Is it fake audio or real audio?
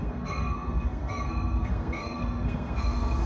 fake